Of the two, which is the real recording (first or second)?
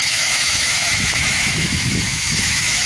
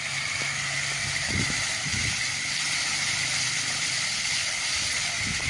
second